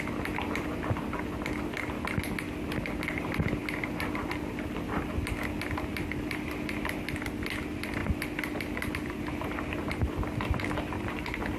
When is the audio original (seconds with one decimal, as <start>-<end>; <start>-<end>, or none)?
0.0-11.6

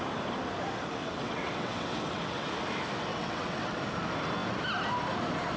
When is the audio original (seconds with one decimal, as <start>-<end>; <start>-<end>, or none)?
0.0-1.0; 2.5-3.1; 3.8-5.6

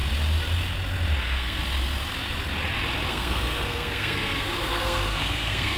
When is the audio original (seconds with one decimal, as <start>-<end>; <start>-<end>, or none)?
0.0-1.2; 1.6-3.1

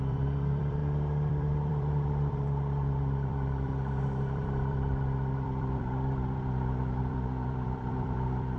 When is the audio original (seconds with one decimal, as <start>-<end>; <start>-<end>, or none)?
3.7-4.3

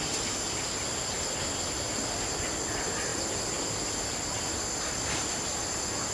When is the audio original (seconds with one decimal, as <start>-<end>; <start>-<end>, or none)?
0.0-6.1

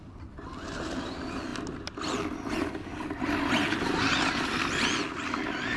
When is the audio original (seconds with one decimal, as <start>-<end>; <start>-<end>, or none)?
0.0-5.8